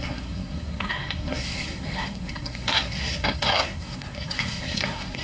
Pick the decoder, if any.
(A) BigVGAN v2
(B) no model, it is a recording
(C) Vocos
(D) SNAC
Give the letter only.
D